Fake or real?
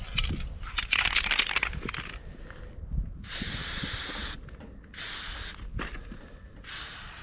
real